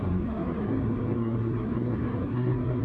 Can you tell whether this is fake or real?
fake